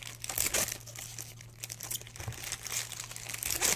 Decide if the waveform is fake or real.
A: real